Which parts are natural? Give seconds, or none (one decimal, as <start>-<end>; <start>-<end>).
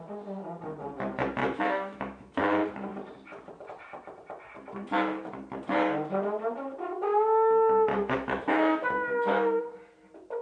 0.0-1.4; 2.4-7.9; 9.6-10.4